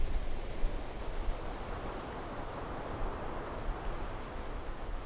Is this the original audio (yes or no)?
yes